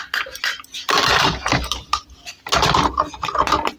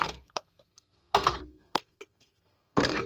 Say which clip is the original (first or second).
first